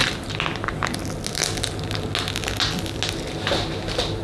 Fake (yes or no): no